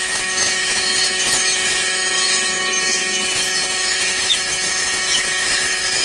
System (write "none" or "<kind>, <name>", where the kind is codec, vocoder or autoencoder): autoencoder, DAC-VAE